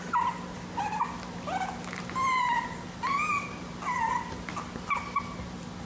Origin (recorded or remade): recorded